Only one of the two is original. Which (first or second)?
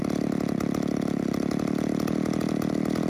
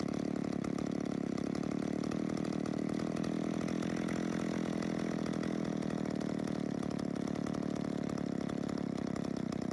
first